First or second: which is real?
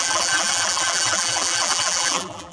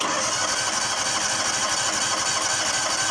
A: second